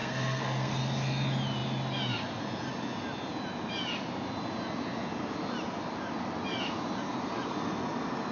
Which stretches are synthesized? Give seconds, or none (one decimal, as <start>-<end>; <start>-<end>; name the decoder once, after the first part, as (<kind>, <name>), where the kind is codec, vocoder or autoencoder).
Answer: 0.0-0.8 (codec, SNAC)